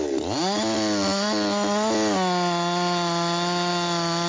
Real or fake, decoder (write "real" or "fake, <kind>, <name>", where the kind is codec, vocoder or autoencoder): real